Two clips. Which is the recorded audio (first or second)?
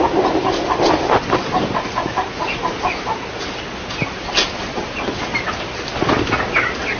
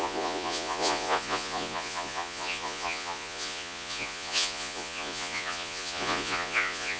first